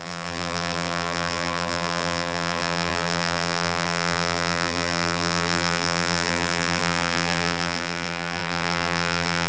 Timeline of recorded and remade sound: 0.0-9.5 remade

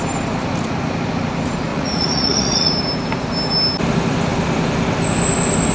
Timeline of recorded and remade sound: 0.0-1.7 recorded; 1.7-2.7 remade; 2.7-5.7 recorded

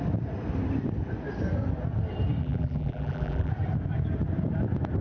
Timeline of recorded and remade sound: 0.0-2.4 recorded; 2.4-3.5 remade; 3.5-5.0 recorded